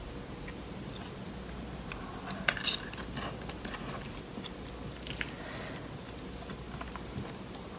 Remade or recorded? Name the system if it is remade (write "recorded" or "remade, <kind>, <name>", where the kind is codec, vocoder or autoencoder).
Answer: recorded